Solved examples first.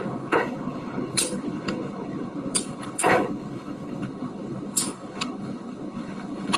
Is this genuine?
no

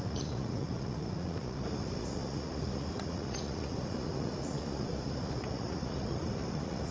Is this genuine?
no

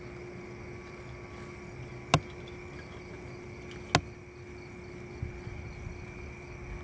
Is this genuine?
yes